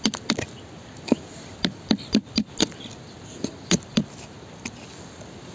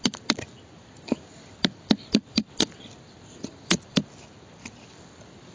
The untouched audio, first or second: first